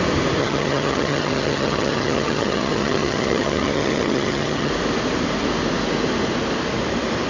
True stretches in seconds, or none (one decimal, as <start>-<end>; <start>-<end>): 0.0-0.4; 4.7-7.3